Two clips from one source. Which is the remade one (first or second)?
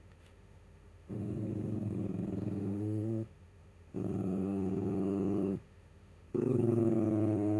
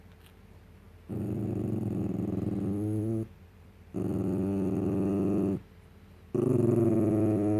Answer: first